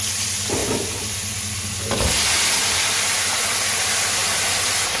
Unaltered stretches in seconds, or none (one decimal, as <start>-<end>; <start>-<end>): 0.0-2.6; 3.4-4.2